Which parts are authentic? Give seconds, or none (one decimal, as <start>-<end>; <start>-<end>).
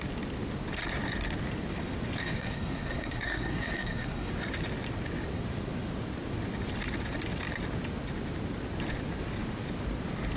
0.0-2.2; 4.3-10.4